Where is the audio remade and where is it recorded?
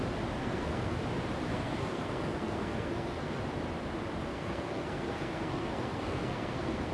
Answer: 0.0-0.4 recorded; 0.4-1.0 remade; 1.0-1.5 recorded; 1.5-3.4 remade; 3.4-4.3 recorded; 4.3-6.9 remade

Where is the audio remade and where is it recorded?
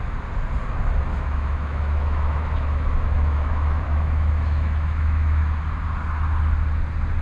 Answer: 0.0-1.1 recorded; 1.1-5.4 remade; 5.4-7.2 recorded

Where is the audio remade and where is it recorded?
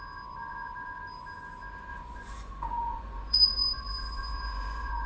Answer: 0.0-1.9 recorded; 1.9-5.1 remade